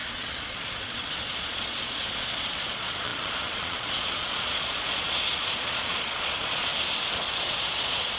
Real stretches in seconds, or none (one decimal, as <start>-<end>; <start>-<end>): 6.7-7.3